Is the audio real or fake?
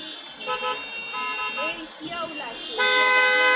real